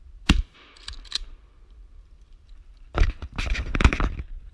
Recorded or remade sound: remade